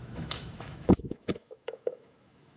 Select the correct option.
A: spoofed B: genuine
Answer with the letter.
A